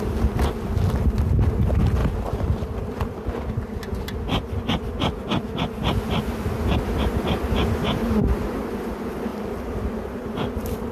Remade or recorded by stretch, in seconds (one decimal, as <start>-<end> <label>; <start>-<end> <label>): 0.0-2.0 recorded; 2.0-3.3 remade; 3.3-9.3 recorded; 9.3-9.9 remade; 9.9-10.9 recorded

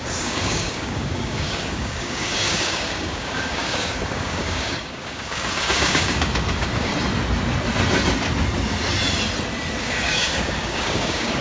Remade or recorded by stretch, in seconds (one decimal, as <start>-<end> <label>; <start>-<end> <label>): 0.0-6.9 remade; 6.9-9.8 recorded; 9.8-11.4 remade

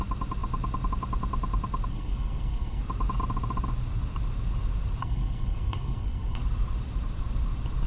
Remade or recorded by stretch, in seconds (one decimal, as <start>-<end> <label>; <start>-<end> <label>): 0.0-1.9 recorded; 1.9-2.8 remade; 2.8-5.0 recorded; 5.0-6.4 remade; 6.4-7.9 recorded

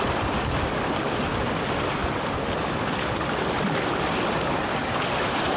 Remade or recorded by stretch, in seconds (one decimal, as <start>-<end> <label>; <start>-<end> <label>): 0.0-2.0 recorded; 2.0-3.6 remade; 3.6-4.8 recorded; 4.8-5.6 remade

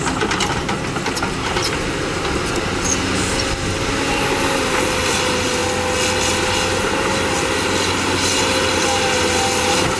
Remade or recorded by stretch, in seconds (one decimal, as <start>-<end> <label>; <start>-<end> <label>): 0.0-10.0 recorded

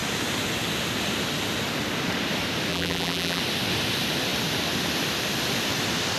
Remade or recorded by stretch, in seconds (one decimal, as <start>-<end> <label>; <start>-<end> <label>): 0.0-2.7 recorded; 2.7-3.4 remade; 3.4-6.2 recorded